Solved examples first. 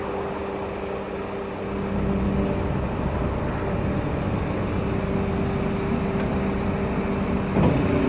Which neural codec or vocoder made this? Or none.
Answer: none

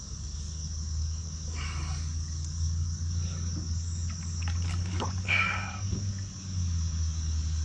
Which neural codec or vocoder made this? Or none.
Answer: codec, DAC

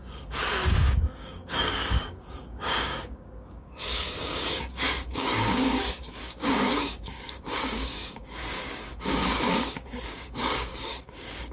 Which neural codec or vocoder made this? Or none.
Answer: codec, DAC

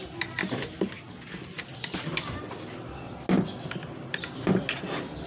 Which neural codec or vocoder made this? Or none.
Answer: none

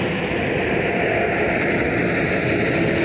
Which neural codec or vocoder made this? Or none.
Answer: none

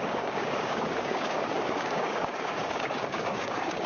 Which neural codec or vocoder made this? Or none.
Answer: codec, DAC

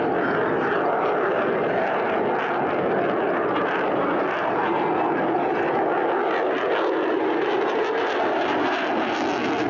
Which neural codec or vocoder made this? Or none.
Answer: none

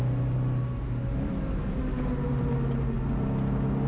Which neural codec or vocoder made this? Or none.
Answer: none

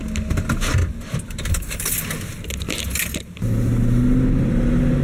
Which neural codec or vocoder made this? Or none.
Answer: none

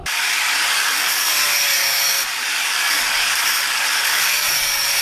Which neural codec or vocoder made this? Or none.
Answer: codec, DAC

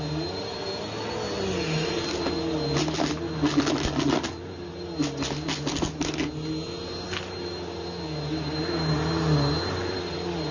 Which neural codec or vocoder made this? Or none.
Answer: none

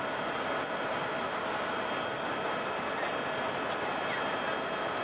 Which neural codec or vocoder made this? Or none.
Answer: none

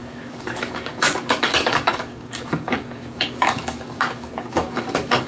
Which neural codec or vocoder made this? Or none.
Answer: codec, DAC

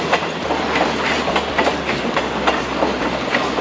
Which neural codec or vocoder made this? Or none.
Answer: none